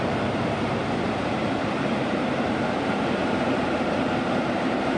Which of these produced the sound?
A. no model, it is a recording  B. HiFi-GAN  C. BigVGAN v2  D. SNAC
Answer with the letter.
C